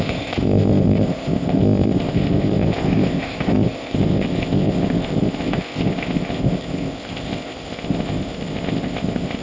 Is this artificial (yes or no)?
yes